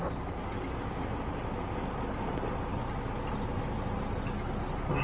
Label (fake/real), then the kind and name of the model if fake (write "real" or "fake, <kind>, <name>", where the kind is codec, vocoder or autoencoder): real